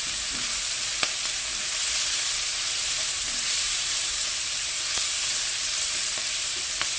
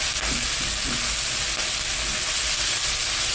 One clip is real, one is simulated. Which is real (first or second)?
second